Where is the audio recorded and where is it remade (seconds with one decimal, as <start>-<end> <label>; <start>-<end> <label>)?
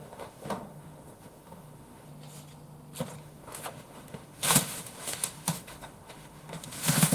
0.0-2.1 remade; 2.1-3.2 recorded; 3.2-7.1 remade